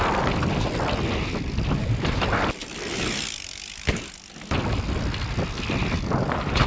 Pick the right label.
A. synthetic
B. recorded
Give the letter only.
B